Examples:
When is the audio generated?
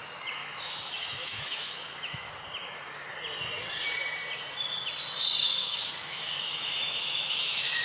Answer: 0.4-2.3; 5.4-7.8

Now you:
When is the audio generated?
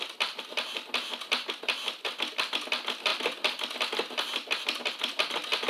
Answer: none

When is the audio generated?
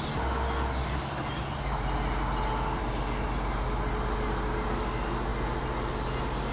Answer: none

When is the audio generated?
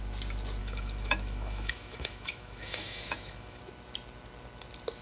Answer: 0.6-3.6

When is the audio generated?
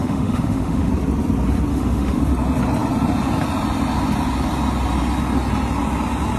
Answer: 0.0-0.9; 1.7-2.2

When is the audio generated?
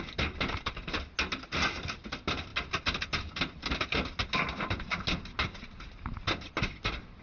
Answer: none